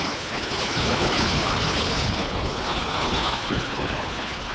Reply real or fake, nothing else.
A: fake